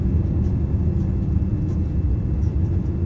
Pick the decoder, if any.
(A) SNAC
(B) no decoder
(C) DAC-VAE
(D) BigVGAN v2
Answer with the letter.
B